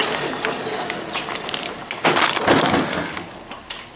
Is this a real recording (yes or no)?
yes